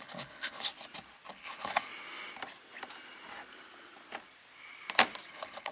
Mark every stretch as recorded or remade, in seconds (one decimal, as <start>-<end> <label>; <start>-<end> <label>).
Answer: 0.0-0.7 remade; 0.7-1.3 recorded; 1.3-1.9 remade; 1.9-5.3 recorded; 5.3-5.7 remade